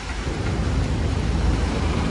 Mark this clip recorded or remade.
recorded